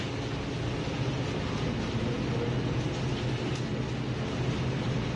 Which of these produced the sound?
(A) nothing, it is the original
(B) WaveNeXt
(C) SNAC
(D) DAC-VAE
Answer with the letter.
A